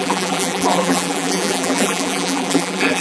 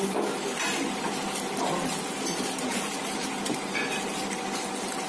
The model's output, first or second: first